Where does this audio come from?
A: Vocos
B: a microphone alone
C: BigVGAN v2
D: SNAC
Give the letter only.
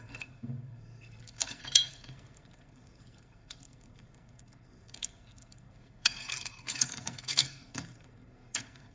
D